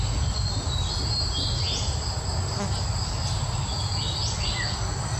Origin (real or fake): real